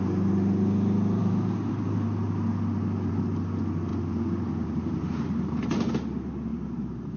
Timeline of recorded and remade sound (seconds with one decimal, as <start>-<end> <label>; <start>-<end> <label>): 0.0-3.9 recorded; 3.9-5.9 remade; 5.9-6.5 recorded; 6.5-7.2 remade